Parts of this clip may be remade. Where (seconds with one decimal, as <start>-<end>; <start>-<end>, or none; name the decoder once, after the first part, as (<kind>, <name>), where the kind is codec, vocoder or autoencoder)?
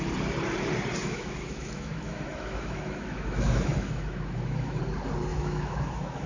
1.0-4.8 (autoencoder, DAC-VAE); 5.3-6.3